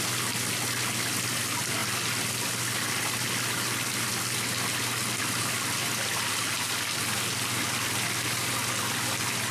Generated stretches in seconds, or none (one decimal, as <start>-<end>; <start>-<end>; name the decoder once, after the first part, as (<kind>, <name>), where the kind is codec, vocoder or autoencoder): none